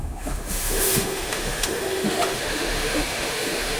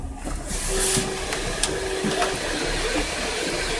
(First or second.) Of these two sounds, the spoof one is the first